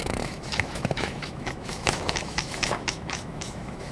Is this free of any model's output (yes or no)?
no